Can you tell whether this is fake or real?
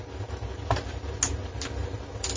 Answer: real